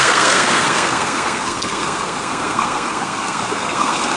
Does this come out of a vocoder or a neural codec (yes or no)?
yes